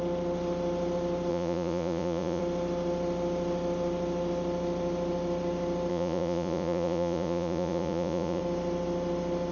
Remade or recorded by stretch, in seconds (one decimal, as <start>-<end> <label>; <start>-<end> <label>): 0.0-1.3 recorded; 1.3-2.4 remade; 2.4-5.9 recorded; 5.9-8.4 remade; 8.4-9.5 recorded